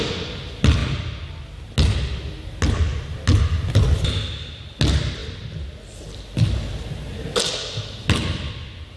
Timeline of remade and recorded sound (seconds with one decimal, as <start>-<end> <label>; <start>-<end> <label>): 0.0-9.0 recorded